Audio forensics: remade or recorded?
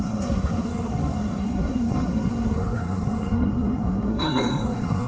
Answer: remade